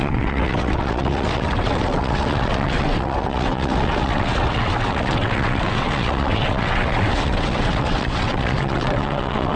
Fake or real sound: fake